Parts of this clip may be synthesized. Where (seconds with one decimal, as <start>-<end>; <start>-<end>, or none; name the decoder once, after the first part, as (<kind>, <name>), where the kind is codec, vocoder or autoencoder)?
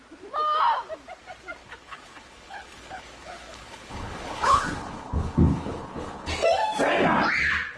1.6-6.3 (codec, HILCodec)